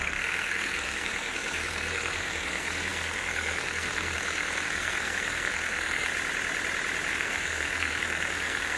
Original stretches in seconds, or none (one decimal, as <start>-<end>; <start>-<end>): 6.1-7.1